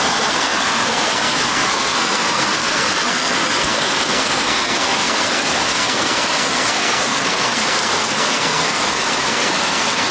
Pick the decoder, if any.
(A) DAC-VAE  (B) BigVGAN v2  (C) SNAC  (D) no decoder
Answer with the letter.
C